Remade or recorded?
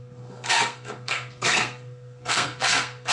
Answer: remade